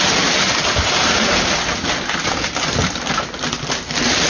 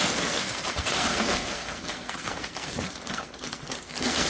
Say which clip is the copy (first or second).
second